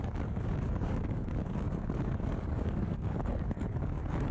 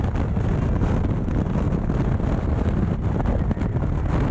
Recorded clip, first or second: second